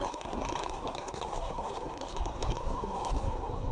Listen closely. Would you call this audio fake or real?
fake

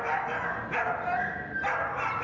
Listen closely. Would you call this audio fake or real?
real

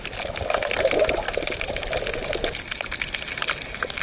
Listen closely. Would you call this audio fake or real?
real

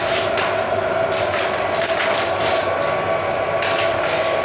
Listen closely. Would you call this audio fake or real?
real